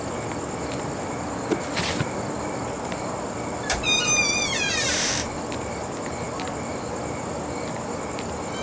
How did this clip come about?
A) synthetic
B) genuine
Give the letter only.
B